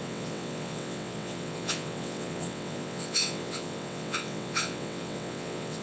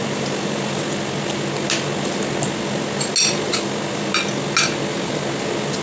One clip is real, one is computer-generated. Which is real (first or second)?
second